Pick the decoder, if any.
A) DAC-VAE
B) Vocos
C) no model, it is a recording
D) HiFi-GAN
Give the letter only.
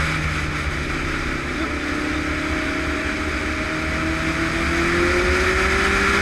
C